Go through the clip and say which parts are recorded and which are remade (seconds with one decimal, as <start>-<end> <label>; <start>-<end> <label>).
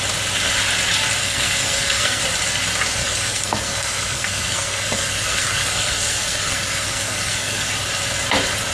0.0-1.2 recorded; 1.2-2.2 remade; 2.2-3.0 recorded; 3.0-7.7 remade; 7.7-8.7 recorded